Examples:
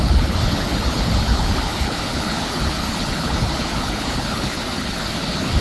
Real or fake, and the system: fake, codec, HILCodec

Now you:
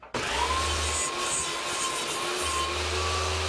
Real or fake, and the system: real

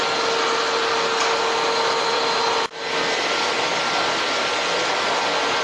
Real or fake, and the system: real